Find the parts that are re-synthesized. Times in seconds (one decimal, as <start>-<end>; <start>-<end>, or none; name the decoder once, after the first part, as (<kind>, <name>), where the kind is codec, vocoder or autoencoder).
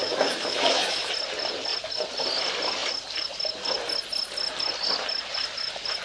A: 0.0-1.1 (autoencoder, DAC-VAE)